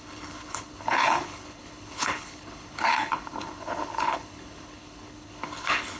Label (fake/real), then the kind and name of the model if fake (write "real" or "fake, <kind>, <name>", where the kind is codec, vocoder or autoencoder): fake, codec, HILCodec